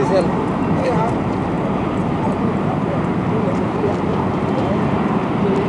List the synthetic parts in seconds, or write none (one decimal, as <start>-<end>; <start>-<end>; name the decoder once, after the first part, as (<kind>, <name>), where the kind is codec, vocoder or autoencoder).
2.0-5.7 (vocoder, BigVGAN v2)